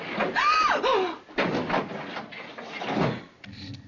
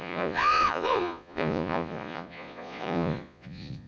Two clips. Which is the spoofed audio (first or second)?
second